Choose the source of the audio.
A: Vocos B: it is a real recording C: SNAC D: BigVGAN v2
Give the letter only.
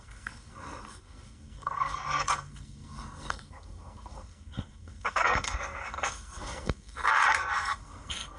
C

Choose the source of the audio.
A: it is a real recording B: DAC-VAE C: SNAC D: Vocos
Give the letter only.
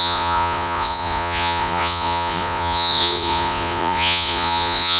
D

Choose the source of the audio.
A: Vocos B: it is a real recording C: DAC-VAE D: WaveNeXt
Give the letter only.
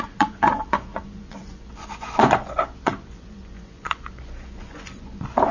A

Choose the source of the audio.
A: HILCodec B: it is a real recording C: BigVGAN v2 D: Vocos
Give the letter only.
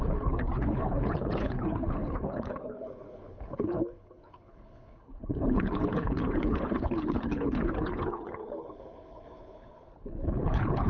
A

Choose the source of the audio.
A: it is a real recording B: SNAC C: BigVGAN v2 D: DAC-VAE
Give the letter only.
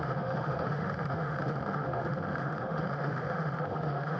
D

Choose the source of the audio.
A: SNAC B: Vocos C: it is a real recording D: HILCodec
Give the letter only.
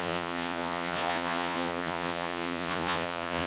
B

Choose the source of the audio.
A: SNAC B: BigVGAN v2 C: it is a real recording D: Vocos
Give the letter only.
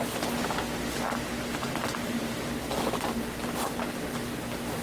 C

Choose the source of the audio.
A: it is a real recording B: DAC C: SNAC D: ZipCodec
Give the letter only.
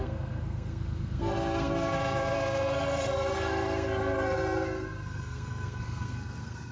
C